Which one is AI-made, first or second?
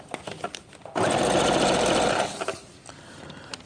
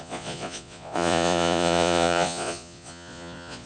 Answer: second